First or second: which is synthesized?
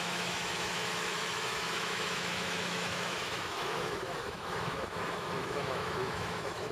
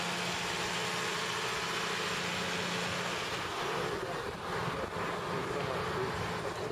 first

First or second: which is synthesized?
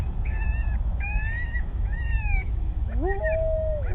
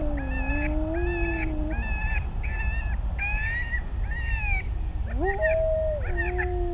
first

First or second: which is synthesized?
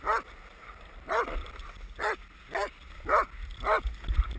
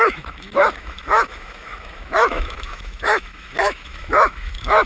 second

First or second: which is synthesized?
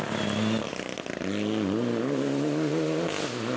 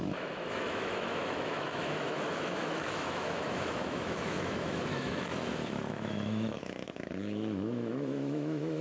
second